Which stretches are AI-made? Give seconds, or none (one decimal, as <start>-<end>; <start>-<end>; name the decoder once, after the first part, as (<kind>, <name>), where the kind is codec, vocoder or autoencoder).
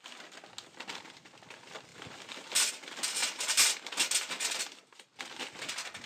none